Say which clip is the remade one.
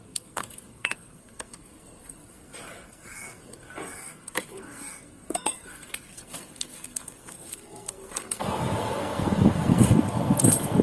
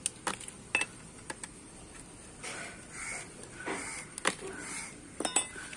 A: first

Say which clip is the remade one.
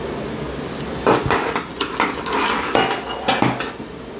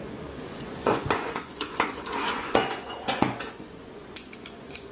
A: second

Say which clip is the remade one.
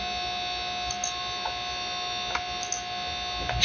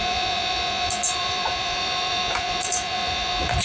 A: second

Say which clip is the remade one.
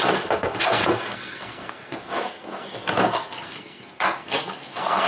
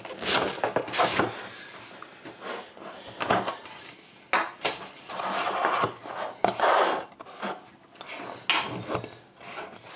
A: first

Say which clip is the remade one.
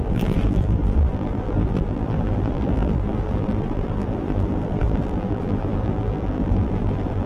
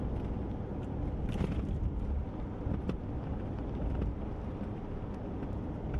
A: first